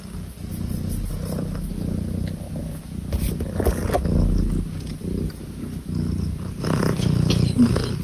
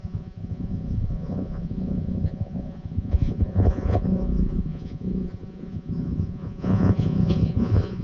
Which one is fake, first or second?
second